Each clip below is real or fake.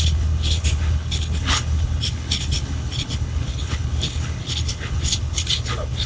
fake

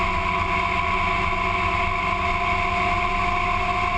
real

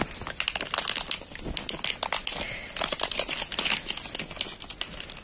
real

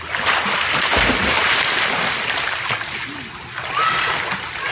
real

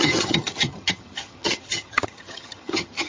fake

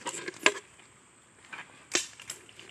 real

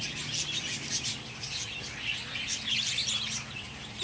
real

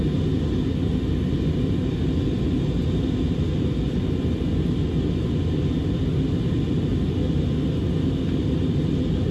real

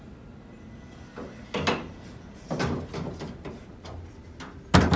real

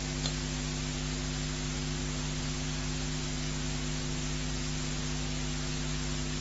real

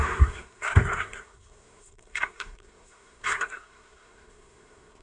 fake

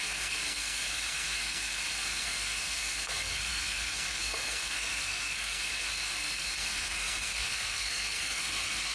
fake